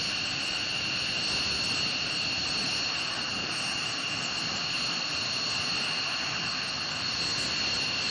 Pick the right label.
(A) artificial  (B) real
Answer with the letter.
B